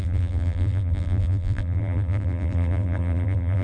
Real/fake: fake